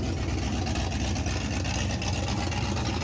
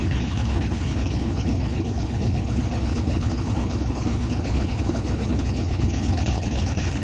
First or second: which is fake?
second